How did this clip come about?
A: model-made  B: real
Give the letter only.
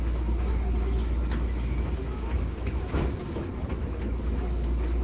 A